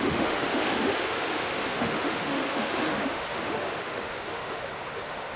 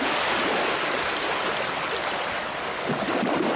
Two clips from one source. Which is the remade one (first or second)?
first